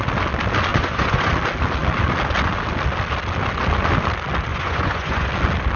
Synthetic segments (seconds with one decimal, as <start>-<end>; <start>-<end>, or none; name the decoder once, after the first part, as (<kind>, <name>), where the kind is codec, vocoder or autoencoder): 0.7-1.3 (vocoder, Vocos); 4.5-5.3